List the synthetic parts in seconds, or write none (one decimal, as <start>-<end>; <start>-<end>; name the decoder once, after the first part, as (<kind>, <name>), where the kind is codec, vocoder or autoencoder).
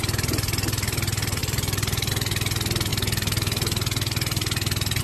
1.4-2.1 (vocoder, BigVGAN v2)